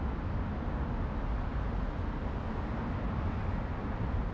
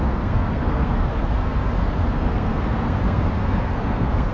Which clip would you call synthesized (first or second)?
second